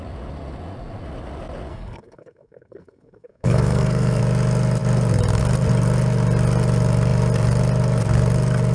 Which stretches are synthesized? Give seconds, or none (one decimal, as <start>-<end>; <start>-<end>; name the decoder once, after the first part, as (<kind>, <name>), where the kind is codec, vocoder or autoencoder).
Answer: 1.7-4.2 (codec, SNAC)